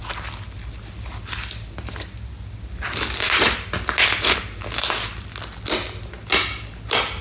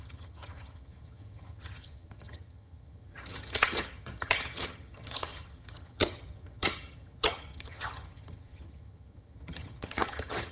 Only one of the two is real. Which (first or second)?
first